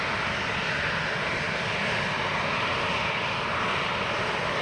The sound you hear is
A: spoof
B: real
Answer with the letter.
B